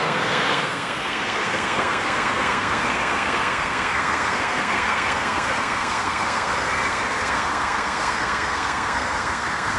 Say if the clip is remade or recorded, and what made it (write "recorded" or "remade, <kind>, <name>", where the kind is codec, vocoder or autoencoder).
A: remade, codec, SNAC